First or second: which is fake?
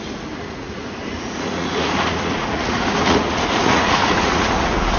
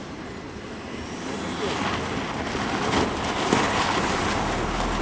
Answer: first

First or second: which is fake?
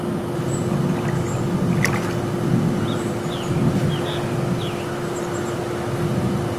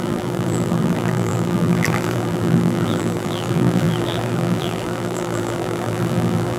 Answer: second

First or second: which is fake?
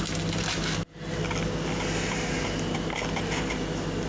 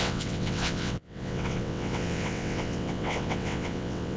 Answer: second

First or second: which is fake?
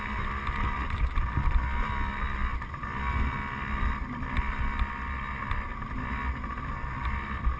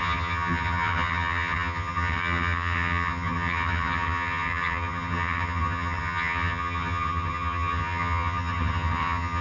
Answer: second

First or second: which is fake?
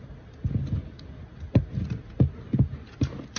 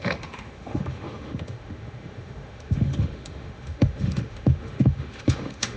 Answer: second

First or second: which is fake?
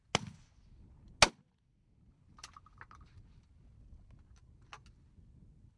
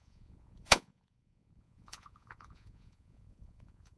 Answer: second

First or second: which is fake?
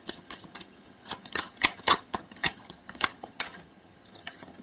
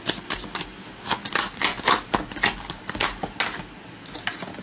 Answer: first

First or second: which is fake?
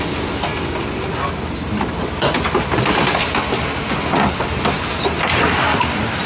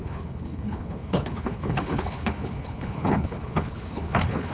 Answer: second